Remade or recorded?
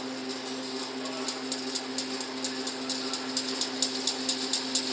recorded